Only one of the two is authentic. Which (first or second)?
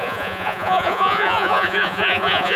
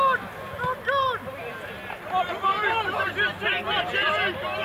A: second